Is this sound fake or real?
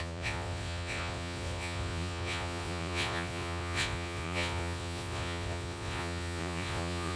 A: fake